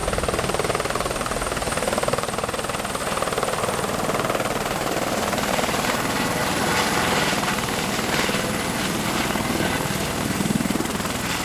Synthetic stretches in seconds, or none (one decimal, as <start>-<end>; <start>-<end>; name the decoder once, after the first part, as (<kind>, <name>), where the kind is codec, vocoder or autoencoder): none